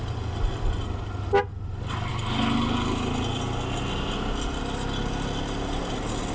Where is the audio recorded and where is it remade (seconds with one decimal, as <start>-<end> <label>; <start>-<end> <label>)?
0.0-6.3 recorded